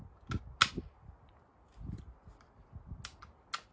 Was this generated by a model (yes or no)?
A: no